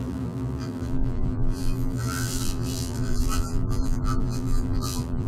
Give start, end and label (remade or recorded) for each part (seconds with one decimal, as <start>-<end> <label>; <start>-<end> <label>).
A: 0.0-5.3 remade